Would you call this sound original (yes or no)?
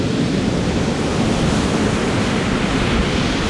yes